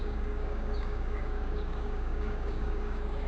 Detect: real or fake fake